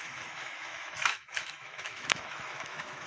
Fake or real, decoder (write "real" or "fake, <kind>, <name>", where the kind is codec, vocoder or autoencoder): fake, autoencoder, DAC-VAE